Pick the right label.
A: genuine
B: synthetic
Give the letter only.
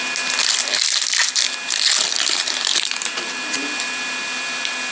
A